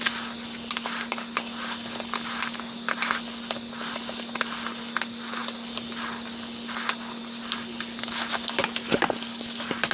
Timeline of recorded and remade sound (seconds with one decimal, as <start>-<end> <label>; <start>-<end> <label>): 0.0-9.9 recorded